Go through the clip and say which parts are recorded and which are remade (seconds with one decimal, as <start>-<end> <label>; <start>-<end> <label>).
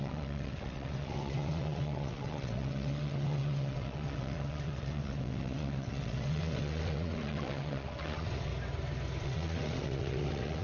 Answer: 0.0-8.5 remade; 8.5-9.2 recorded; 9.2-10.6 remade